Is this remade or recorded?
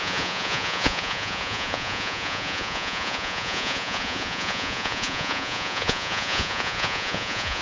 remade